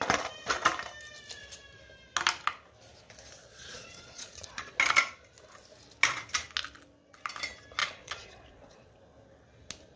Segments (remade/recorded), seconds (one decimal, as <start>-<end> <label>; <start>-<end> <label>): 0.0-3.4 recorded; 3.4-4.8 remade; 4.8-7.8 recorded; 7.8-9.0 remade; 9.0-10.0 recorded